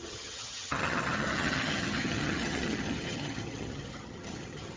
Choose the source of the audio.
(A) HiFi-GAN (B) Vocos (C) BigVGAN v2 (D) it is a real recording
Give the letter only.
A